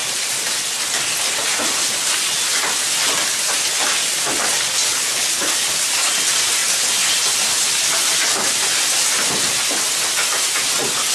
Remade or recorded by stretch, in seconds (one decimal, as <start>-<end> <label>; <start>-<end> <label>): 0.0-4.9 recorded; 4.9-5.5 remade; 5.5-11.1 recorded